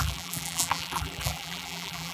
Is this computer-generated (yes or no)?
yes